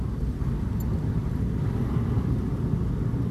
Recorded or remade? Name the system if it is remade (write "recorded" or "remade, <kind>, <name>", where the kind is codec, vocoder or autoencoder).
recorded